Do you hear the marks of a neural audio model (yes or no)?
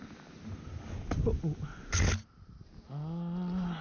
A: no